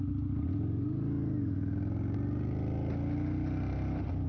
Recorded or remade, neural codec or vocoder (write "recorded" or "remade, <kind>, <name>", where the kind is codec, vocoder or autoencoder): recorded